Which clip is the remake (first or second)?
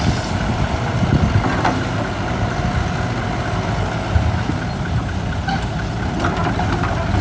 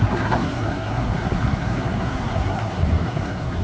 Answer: second